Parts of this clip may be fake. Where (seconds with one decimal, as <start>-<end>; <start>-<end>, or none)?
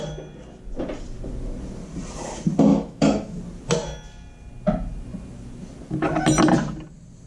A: 2.7-3.4